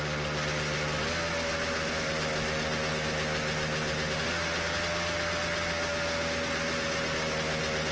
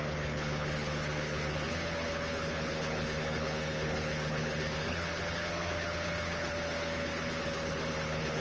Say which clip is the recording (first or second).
first